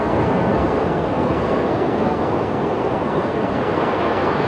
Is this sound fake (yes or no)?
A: yes